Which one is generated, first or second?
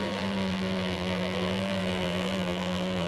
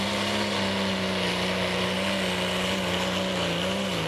first